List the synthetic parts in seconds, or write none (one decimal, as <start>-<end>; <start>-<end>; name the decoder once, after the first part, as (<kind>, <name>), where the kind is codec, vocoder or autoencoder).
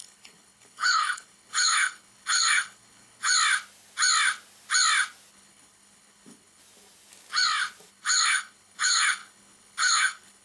0.0-3.3 (codec, HILCodec); 5.3-6.6; 7.9-10.4